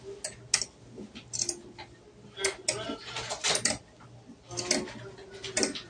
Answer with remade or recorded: recorded